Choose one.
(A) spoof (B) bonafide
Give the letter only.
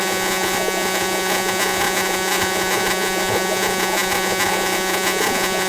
A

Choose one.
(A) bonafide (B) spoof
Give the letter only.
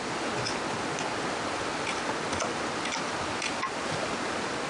A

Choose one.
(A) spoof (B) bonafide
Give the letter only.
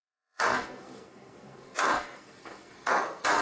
A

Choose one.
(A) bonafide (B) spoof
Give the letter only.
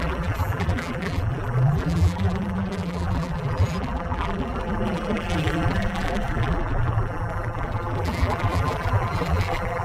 B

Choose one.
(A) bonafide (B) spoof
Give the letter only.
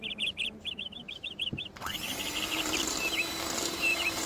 B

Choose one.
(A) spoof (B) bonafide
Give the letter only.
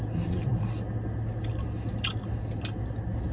B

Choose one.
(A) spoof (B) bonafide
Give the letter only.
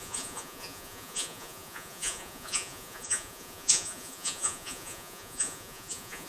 A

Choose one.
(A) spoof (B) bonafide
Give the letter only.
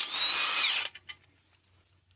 B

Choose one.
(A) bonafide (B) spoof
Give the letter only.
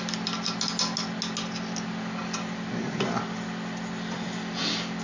A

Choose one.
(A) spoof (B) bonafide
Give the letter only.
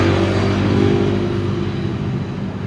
B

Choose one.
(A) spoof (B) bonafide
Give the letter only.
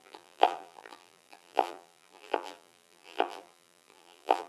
A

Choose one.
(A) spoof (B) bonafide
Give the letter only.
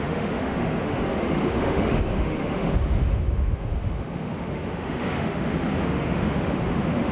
A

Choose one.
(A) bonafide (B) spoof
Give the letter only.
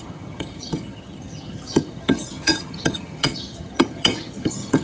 B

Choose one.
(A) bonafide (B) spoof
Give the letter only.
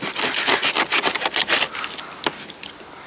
A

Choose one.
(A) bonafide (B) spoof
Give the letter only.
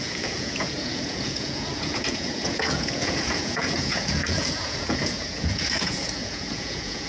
B